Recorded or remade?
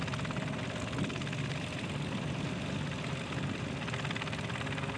remade